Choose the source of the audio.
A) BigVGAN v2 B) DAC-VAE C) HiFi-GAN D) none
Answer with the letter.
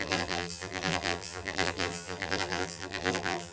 A